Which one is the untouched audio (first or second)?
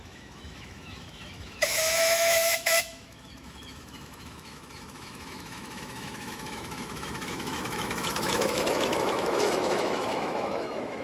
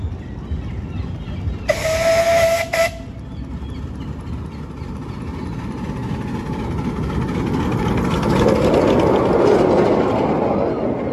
second